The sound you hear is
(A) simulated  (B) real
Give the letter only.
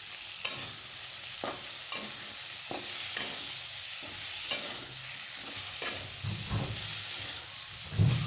B